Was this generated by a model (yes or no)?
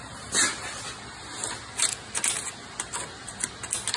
no